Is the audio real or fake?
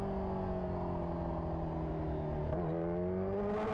real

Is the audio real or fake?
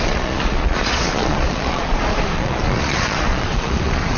fake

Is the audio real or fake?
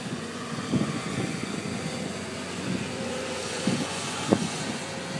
fake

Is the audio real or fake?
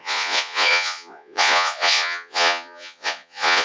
fake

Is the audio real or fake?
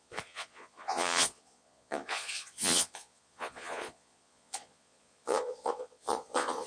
fake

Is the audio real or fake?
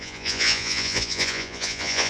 fake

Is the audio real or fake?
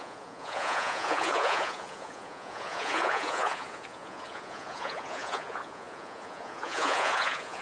fake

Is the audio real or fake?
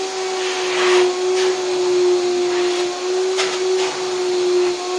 real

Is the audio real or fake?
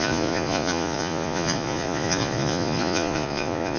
fake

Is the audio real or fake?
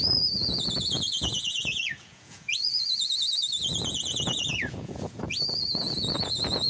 fake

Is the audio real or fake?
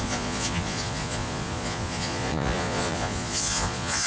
fake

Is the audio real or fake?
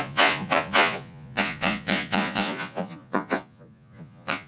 fake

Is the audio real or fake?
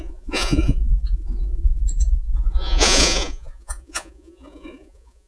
fake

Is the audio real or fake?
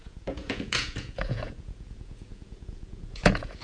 fake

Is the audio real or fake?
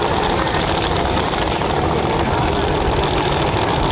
real